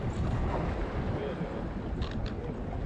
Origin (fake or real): real